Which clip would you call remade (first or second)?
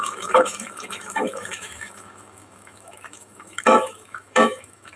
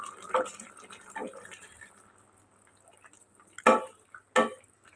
first